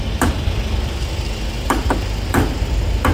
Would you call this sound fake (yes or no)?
no